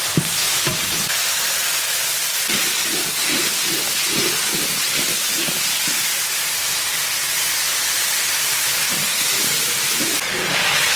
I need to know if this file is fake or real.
real